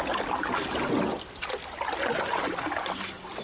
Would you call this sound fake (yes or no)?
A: no